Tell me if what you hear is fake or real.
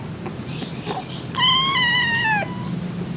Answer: real